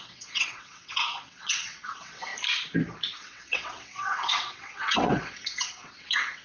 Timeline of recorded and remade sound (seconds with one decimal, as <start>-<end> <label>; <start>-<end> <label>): 0.0-2.3 remade; 2.3-3.2 recorded; 3.2-6.4 remade